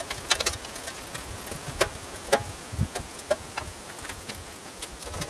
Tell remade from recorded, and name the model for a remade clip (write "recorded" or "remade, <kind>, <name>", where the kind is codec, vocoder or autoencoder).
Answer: recorded